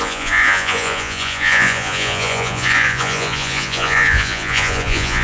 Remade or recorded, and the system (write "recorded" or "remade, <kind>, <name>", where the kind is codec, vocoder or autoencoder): remade, vocoder, Vocos